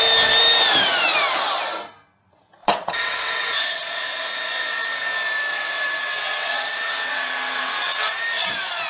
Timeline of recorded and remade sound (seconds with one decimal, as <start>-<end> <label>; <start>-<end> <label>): 0.0-2.6 recorded; 2.6-3.8 remade; 3.8-5.5 recorded; 5.5-8.2 remade; 8.2-8.9 recorded